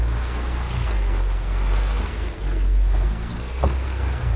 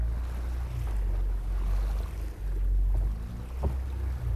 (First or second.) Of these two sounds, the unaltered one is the second